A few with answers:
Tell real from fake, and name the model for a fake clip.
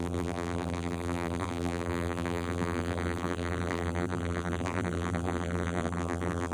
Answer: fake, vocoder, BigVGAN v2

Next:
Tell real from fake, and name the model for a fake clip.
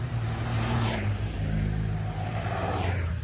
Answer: fake, vocoder, BigVGAN v2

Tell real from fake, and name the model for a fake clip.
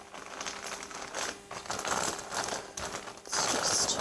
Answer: real